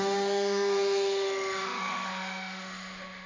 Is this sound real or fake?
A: fake